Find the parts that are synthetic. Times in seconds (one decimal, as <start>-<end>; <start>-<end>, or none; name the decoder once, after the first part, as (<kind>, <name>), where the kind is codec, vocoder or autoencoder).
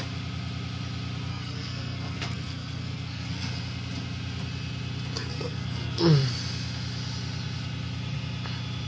1.3-3.5 (codec, SNAC); 5.3-6.0